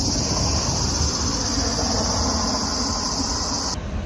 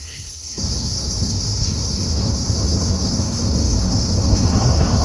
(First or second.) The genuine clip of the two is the first